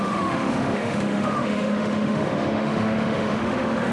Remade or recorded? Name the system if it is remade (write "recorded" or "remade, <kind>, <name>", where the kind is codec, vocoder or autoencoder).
remade, autoencoder, DAC-VAE